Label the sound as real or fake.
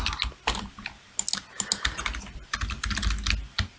real